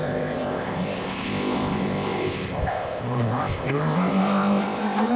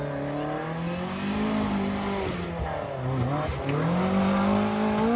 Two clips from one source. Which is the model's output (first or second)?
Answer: first